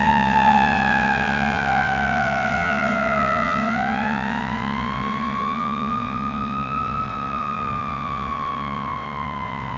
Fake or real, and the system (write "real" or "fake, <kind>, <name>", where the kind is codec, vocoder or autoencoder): fake, vocoder, WaveNeXt